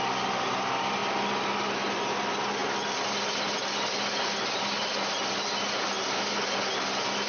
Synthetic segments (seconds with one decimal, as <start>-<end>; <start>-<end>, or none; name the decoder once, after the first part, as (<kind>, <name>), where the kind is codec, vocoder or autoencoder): none